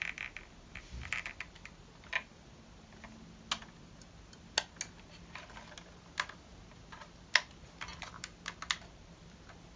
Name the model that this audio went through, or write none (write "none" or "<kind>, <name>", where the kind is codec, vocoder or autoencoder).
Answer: none